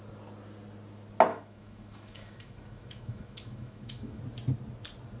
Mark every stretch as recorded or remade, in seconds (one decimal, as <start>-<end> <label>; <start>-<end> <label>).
0.0-1.3 recorded; 1.3-4.2 remade; 4.2-5.2 recorded